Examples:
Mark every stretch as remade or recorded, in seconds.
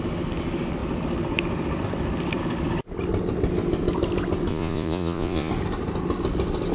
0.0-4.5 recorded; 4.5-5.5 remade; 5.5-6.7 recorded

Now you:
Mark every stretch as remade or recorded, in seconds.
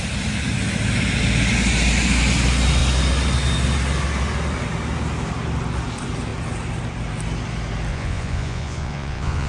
0.0-7.9 recorded; 7.9-9.5 remade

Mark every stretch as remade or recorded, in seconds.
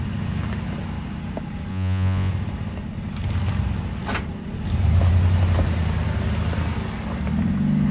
0.0-1.7 recorded; 1.7-2.3 remade; 2.3-7.9 recorded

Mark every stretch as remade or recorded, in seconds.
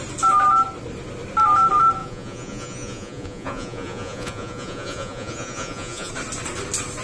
0.0-2.0 recorded; 2.0-6.1 remade; 6.1-7.0 recorded